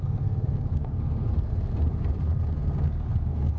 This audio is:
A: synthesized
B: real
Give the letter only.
A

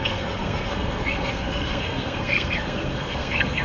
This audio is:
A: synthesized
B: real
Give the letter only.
A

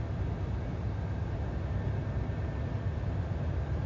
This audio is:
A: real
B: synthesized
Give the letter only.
A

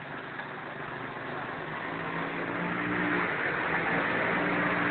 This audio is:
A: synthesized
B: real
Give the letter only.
B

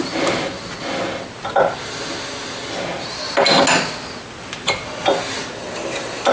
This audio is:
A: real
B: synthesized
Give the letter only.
A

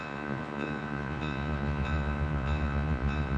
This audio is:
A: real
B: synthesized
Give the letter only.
B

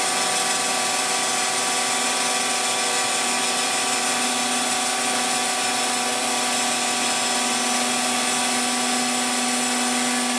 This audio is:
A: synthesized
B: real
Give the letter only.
B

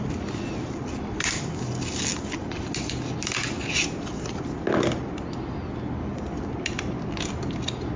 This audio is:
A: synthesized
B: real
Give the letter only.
B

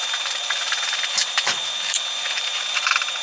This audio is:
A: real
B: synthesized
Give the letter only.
B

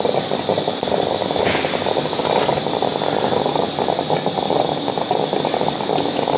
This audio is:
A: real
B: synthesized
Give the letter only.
A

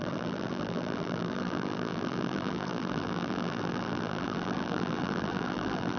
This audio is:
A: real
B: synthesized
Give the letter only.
B